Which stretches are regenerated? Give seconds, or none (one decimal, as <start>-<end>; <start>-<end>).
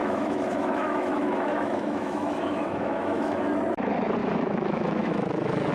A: 0.0-3.4; 4.2-5.7